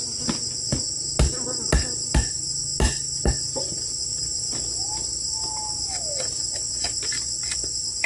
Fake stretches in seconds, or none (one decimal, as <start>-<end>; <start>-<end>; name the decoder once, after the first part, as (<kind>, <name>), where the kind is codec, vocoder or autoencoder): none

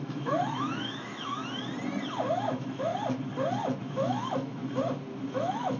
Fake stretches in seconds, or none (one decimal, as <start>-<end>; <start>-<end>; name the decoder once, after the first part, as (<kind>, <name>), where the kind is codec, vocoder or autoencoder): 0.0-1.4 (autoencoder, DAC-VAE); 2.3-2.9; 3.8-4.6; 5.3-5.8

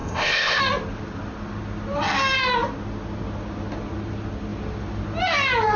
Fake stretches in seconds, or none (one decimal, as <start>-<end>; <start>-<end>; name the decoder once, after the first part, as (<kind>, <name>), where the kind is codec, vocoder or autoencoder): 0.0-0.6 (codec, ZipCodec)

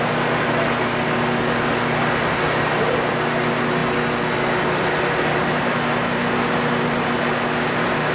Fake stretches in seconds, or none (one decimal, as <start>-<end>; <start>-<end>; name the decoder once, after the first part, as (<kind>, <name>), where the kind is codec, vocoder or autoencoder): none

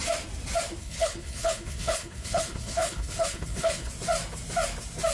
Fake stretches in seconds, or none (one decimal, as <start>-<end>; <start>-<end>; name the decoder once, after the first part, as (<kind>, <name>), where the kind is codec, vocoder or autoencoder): 0.8-3.9 (codec, HILCodec)